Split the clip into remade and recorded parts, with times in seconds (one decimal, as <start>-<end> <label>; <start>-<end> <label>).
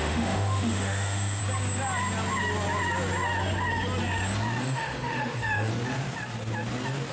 0.0-1.4 remade; 1.4-4.6 recorded; 4.6-5.7 remade; 5.7-7.1 recorded